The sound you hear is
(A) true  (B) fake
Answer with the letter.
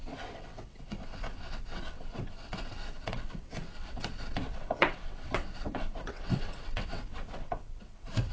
B